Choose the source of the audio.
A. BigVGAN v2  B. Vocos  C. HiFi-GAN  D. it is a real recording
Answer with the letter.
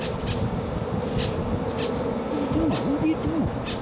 D